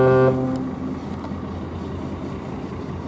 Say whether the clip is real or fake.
real